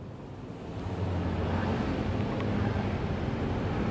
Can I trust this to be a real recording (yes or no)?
yes